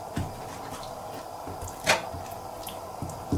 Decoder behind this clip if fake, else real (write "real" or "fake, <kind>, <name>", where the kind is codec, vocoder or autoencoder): real